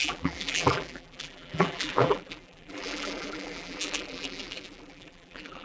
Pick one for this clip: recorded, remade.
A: remade